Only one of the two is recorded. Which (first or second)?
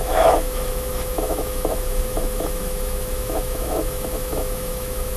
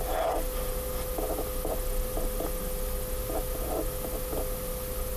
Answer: second